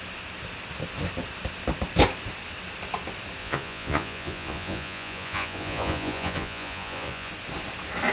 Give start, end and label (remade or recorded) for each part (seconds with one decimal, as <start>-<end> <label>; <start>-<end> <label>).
0.0-3.4 recorded; 3.4-7.3 remade; 7.3-8.1 recorded